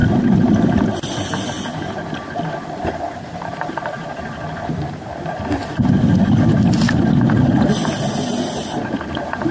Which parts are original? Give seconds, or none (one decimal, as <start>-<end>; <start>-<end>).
0.0-0.9